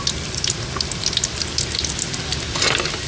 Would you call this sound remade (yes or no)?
no